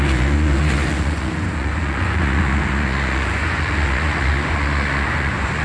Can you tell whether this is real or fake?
fake